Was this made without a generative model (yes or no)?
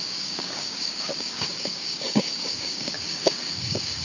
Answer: no